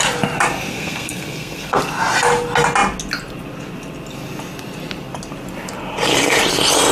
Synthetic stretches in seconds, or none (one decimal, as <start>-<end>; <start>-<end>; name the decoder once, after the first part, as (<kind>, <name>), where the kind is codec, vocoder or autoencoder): 0.7-1.8 (codec, SNAC)